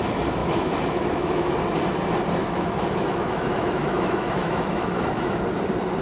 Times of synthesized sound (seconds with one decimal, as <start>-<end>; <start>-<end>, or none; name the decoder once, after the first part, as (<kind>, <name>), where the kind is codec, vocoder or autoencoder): 0.4-1.5 (autoencoder, DAC-VAE); 2.4-5.4